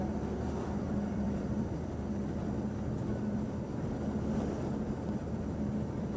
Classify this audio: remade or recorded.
remade